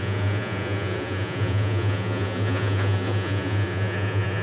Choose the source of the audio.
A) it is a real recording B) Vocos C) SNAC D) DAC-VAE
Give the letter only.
B